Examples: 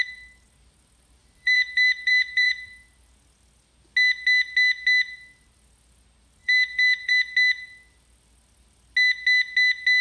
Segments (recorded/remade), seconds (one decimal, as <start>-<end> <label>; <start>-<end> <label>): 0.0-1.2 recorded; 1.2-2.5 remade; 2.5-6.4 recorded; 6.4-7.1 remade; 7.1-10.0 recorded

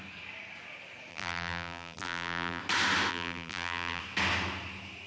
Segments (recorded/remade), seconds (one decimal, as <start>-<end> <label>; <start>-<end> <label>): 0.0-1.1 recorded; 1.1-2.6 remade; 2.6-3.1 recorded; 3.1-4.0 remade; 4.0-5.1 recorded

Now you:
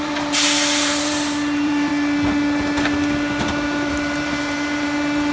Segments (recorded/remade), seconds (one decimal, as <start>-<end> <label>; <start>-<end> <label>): 0.0-1.9 remade; 1.9-3.9 recorded; 3.9-5.3 remade

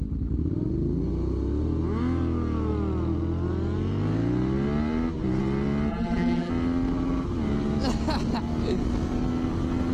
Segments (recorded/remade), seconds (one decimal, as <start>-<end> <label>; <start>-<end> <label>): 0.0-5.9 recorded; 5.9-6.5 remade; 6.5-9.9 recorded

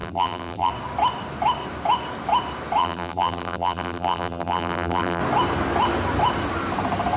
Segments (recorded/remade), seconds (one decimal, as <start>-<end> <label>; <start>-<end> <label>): 0.0-0.7 remade; 0.7-2.8 recorded; 2.8-5.2 remade; 5.2-7.2 recorded